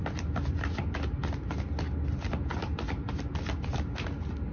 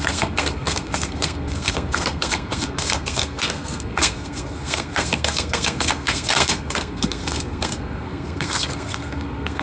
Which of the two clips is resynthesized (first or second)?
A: second